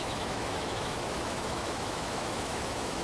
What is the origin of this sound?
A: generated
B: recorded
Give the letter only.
A